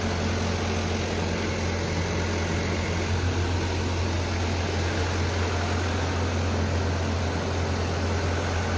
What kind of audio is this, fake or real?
real